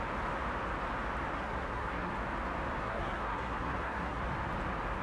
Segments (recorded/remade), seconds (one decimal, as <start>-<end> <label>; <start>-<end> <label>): 0.0-1.3 recorded; 1.3-2.1 remade; 2.1-2.8 recorded; 2.8-4.2 remade; 4.2-5.0 recorded